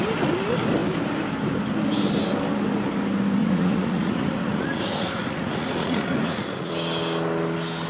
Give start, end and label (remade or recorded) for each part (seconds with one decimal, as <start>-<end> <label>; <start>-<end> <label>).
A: 0.0-3.4 recorded; 3.4-6.7 remade; 6.7-7.9 recorded